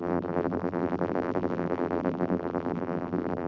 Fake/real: fake